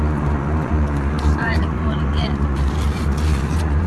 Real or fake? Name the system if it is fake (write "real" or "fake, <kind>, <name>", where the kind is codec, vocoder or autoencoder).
fake, vocoder, Vocos